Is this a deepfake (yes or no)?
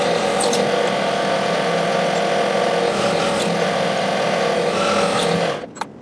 no